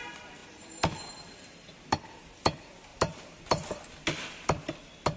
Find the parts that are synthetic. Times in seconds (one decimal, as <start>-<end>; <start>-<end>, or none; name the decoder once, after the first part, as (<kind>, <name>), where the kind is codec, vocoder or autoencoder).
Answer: 2.9-3.4 (vocoder, BigVGAN v2)